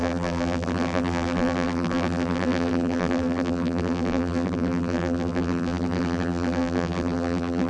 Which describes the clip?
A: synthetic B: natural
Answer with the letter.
A